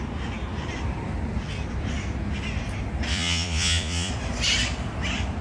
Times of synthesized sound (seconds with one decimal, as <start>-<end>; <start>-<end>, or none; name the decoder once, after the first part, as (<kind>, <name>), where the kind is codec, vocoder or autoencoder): 3.1-4.1 (vocoder, Vocos)